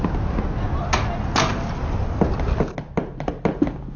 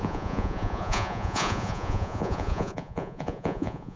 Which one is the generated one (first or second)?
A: second